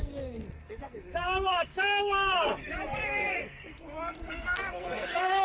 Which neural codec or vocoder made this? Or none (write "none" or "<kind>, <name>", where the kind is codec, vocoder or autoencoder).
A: codec, SNAC